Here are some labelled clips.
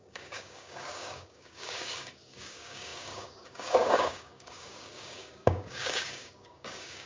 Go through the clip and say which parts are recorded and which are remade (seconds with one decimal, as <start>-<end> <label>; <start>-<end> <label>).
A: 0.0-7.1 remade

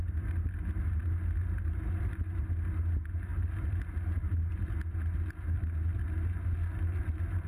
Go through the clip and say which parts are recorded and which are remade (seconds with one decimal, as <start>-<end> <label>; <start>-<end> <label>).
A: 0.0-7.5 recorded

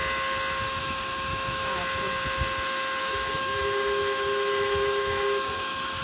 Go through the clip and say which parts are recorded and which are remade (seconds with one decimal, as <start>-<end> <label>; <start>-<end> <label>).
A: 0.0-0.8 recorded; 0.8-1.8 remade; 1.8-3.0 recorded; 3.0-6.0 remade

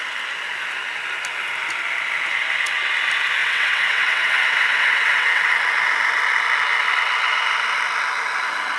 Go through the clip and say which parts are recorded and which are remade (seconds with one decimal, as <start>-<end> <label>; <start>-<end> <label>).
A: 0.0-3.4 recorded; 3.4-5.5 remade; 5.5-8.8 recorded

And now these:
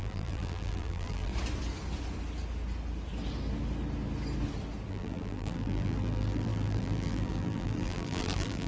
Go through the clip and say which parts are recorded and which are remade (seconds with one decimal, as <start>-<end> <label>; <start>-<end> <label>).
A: 0.0-1.3 remade; 1.3-4.9 recorded; 4.9-8.7 remade

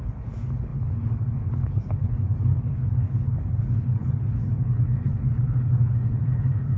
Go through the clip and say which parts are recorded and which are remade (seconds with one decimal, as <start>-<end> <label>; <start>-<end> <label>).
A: 0.0-6.8 remade

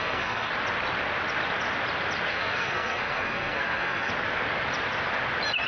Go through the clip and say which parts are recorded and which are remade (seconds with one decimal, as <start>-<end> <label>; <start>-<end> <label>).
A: 0.0-0.5 remade; 0.5-2.3 recorded; 2.3-4.1 remade; 4.1-5.7 recorded

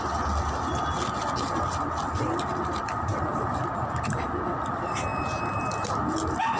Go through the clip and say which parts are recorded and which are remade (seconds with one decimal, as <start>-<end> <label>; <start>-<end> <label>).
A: 0.0-6.6 recorded